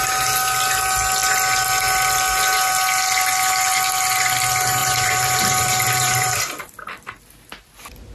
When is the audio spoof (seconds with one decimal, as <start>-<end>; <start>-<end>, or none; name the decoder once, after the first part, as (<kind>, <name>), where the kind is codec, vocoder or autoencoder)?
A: 4.8-6.7 (vocoder, BigVGAN v2)